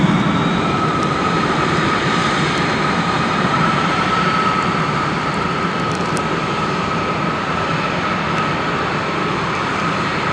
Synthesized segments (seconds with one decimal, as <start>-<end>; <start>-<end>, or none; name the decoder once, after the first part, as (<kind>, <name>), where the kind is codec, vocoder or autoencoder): 0.0-7.7 (vocoder, BigVGAN v2); 9.7-10.3